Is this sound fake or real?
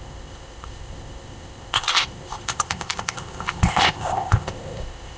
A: fake